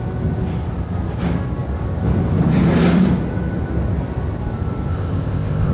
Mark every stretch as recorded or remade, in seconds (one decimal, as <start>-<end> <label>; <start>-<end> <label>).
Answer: 0.0-4.9 recorded; 4.9-5.7 remade